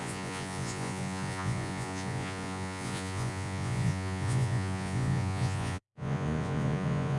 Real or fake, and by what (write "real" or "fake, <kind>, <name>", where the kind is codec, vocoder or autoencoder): fake, vocoder, Vocos